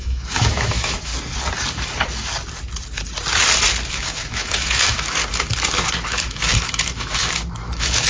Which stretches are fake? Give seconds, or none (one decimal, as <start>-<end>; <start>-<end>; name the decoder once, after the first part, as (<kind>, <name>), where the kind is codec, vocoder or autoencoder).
0.0-1.1 (autoencoder, DAC-VAE); 3.9-5.2; 6.0-8.1